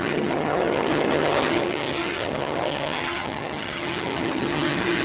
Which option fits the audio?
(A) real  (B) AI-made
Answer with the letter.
B